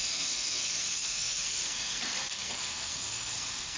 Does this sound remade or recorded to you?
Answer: remade